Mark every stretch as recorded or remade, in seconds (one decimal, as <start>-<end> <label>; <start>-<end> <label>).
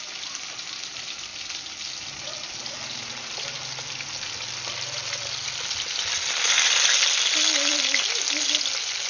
0.0-9.1 recorded